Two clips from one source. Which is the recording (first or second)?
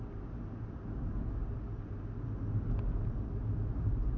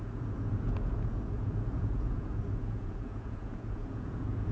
first